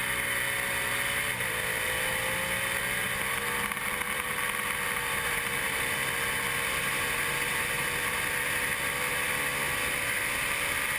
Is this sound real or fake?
real